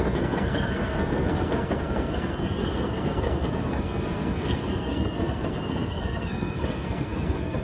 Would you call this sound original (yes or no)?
no